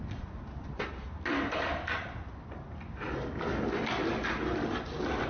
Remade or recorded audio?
recorded